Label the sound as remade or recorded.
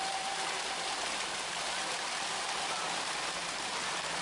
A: recorded